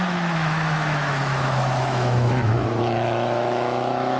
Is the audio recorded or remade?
remade